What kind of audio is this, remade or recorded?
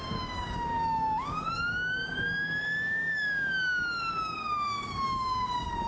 remade